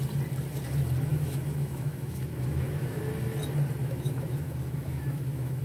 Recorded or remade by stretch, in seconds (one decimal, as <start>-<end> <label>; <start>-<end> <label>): 0.0-1.1 recorded; 1.1-3.0 remade; 3.0-3.8 recorded; 3.8-5.6 remade